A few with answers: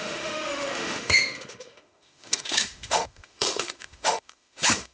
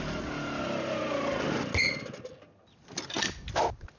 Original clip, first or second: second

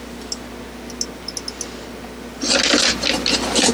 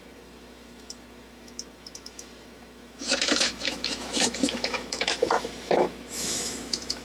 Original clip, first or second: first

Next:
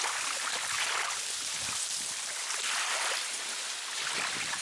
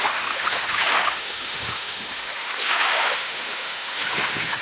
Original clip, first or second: first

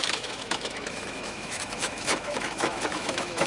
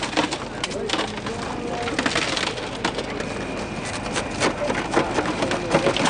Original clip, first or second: second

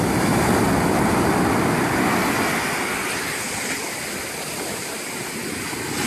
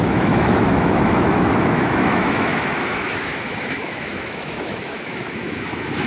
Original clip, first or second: first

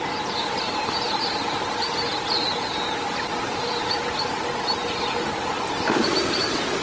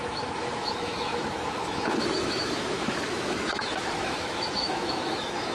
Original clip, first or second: first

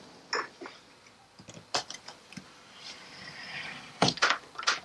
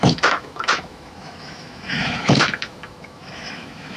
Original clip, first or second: first